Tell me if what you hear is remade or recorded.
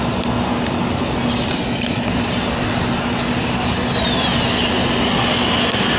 recorded